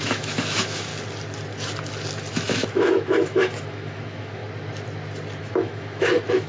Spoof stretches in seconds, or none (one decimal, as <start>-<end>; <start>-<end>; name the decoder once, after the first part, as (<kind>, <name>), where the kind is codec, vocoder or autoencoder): 0.0-0.9 (autoencoder, DAC-VAE); 2.3-4.4; 5.4-6.5